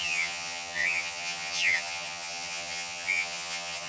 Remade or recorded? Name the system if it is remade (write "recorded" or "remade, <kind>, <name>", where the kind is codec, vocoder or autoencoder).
remade, vocoder, HiFi-GAN